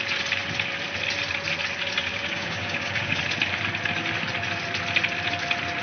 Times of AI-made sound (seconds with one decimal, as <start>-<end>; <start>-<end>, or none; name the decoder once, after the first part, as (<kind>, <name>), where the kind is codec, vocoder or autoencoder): 2.1-3.2 (codec, DAC)